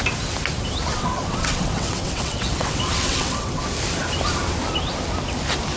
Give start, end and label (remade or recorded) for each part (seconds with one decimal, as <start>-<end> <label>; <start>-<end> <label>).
0.0-0.9 recorded; 0.9-3.6 remade; 3.6-5.8 recorded